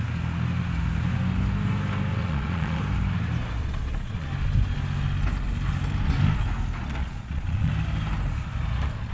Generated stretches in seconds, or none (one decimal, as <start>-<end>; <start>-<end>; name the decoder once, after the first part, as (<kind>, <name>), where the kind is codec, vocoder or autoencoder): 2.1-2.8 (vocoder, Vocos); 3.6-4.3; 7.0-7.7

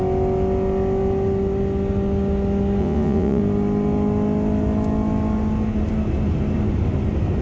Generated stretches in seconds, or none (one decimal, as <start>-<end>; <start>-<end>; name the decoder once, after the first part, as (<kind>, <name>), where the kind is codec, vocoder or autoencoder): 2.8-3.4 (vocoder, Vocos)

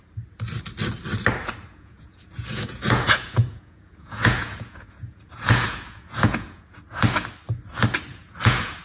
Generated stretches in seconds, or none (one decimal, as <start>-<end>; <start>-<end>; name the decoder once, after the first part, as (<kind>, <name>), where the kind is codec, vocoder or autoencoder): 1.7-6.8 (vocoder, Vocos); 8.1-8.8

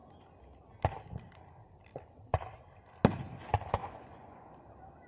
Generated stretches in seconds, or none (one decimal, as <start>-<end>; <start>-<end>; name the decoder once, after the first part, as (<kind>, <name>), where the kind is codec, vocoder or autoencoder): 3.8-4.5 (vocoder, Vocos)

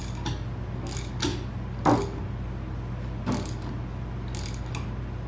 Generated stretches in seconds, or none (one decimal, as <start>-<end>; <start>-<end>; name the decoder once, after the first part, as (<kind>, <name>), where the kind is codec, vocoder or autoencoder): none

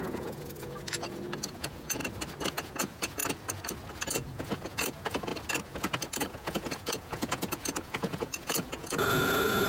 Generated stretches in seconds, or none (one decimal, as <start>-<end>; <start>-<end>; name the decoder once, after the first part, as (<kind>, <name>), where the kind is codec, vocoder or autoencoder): 0.0-2.0 (vocoder, Vocos); 2.5-3.2; 4.0-5.3; 6.1-9.7

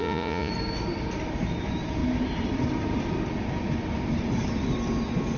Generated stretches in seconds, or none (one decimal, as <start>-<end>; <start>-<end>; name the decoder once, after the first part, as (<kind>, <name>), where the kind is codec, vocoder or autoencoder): 0.0-0.5 (vocoder, Vocos)